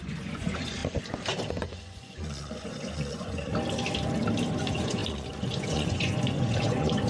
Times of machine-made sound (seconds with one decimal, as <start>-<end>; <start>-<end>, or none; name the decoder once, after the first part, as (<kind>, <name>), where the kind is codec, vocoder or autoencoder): 0.0-0.8 (vocoder, Vocos); 1.5-3.5; 4.5-7.1